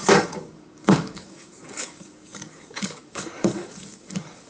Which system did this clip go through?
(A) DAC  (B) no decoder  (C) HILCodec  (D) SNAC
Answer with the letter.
A